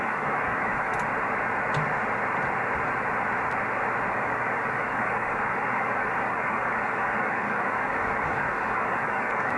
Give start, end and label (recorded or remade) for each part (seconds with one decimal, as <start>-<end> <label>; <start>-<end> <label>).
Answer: 0.0-0.9 remade; 0.9-4.1 recorded; 4.1-9.6 remade